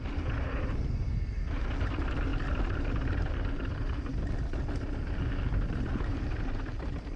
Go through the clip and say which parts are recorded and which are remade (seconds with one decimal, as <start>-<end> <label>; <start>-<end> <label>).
0.0-7.2 recorded

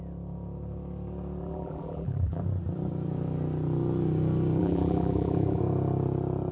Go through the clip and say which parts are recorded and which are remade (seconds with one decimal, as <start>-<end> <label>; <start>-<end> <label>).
0.0-1.4 recorded; 1.4-2.4 remade; 2.4-4.6 recorded; 4.6-5.6 remade; 5.6-6.5 recorded

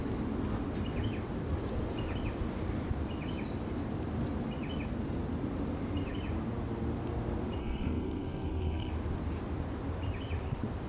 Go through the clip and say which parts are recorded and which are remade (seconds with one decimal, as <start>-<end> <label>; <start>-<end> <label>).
0.0-7.6 recorded; 7.6-8.9 remade; 8.9-10.9 recorded

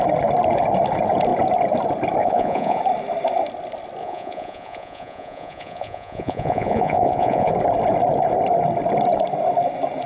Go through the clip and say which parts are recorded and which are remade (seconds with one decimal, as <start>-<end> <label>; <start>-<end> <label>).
0.0-2.2 recorded; 2.2-2.8 remade; 2.8-4.0 recorded; 4.0-7.5 remade; 7.5-10.1 recorded